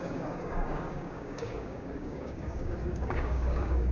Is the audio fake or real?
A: fake